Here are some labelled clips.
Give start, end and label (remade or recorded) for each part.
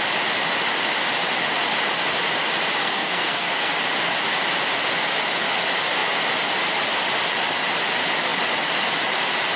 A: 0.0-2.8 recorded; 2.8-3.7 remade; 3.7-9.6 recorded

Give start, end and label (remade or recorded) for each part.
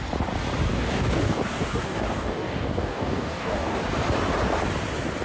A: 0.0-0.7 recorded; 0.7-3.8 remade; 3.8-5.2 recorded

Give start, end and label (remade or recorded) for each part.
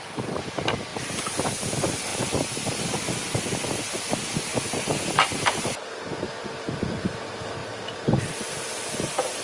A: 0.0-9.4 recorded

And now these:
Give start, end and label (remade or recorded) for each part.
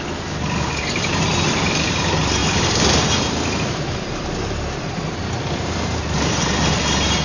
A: 0.0-2.4 recorded; 2.4-6.7 remade; 6.7-7.2 recorded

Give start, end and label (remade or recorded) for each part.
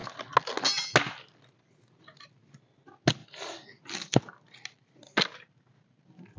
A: 0.0-6.4 recorded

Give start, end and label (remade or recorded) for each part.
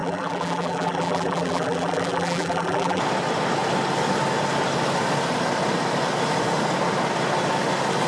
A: 0.0-3.0 remade; 3.0-8.1 recorded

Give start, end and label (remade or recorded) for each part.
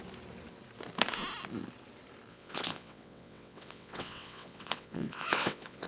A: 0.0-2.3 recorded; 2.3-5.9 remade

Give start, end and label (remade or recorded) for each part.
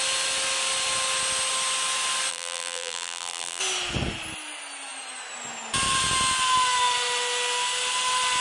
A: 0.0-2.3 recorded; 2.3-3.6 remade; 3.6-8.4 recorded